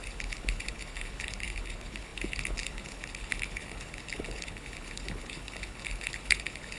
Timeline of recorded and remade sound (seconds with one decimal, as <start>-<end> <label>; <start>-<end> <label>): 0.0-6.8 remade